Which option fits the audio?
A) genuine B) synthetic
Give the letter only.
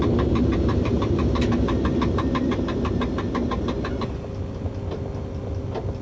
A